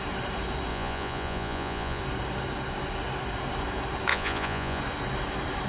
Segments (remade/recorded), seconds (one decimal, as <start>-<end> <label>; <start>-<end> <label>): 0.0-0.7 recorded; 0.7-2.0 remade; 2.0-4.1 recorded; 4.1-4.8 remade; 4.8-5.7 recorded